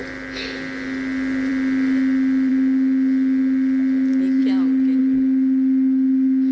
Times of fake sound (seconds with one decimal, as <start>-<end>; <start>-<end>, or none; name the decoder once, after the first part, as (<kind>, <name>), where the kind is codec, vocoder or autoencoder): none